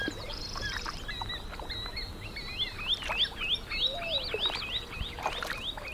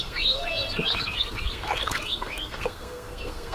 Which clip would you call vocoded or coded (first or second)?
second